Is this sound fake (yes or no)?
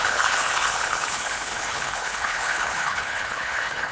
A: yes